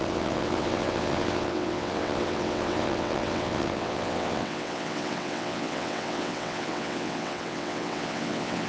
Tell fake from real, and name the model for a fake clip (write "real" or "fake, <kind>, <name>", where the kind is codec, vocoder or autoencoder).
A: fake, vocoder, WaveNeXt